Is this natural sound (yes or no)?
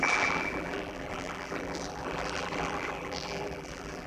no